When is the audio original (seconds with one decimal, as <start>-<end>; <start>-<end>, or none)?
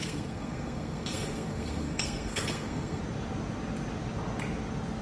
3.0-5.0